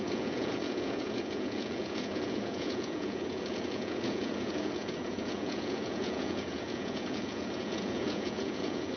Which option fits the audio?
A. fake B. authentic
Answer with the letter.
A